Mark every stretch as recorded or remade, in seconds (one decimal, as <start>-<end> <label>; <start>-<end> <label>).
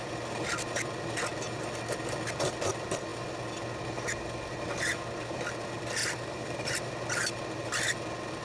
0.0-6.0 recorded; 6.0-6.9 remade; 6.9-8.4 recorded